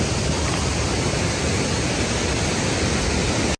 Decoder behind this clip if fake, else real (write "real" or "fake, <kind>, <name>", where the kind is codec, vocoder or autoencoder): real